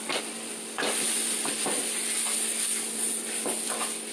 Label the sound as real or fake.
real